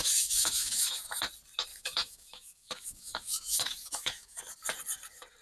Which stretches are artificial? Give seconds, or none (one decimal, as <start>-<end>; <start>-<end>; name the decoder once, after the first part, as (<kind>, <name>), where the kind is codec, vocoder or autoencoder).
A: 0.0-1.2 (autoencoder, DAC-VAE); 1.7-4.4